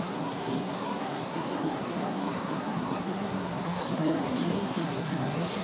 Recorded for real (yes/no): no